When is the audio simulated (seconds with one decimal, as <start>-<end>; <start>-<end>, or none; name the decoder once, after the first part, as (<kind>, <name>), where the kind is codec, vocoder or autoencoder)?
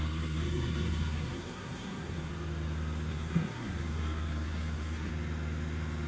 0.0-2.3 (codec, SNAC); 3.1-5.1